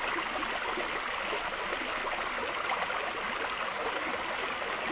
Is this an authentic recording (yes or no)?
yes